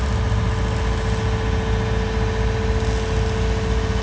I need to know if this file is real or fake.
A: real